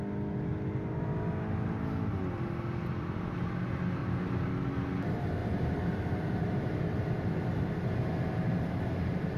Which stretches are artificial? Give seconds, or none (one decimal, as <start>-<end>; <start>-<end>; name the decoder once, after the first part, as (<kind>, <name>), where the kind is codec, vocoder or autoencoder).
4.0-4.5 (vocoder, BigVGAN v2); 5.4-6.8